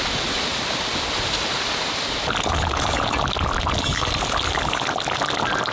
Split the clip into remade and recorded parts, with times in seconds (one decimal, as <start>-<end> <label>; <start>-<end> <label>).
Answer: 0.0-5.7 recorded